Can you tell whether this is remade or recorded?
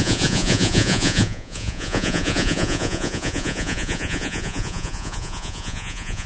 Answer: remade